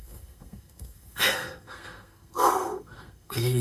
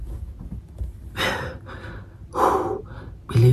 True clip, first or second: second